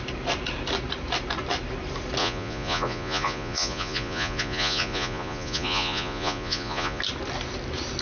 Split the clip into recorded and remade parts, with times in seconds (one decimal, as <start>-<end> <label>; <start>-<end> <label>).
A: 0.0-2.2 recorded; 2.2-7.0 remade; 7.0-8.0 recorded